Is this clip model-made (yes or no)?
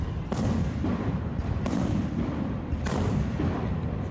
no